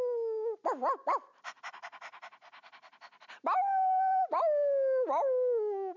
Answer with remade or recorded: recorded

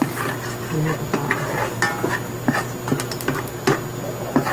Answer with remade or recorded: recorded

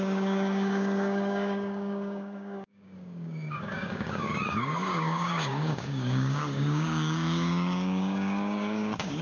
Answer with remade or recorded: remade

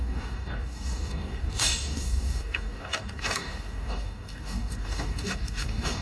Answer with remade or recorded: remade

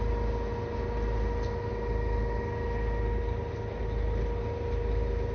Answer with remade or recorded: recorded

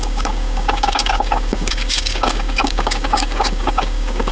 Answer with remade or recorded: remade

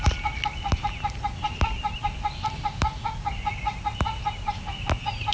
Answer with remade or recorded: recorded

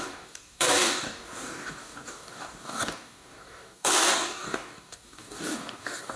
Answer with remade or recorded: remade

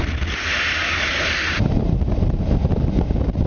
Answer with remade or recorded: recorded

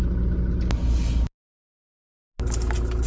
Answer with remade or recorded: recorded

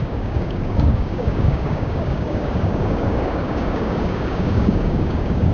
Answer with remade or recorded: remade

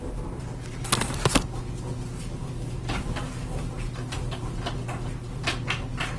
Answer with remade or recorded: recorded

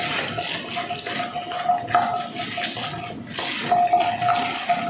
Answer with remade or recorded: recorded